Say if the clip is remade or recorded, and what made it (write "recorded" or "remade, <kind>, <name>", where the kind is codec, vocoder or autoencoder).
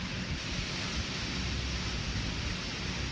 recorded